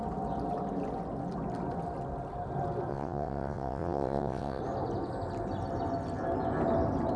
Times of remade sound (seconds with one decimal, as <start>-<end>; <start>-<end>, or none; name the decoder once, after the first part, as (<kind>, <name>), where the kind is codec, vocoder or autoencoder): 2.9-4.6 (vocoder, WaveNeXt)